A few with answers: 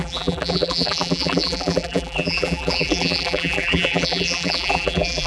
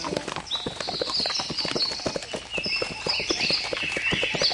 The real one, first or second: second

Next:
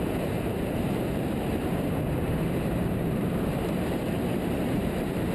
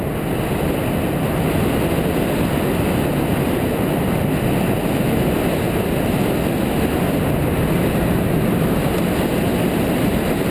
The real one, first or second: second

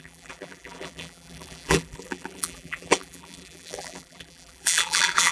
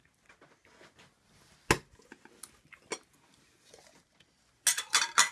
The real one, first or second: second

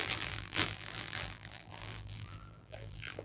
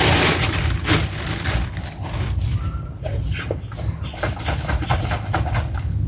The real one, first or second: second